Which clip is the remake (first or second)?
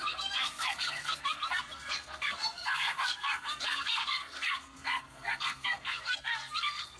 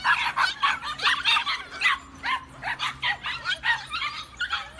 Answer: first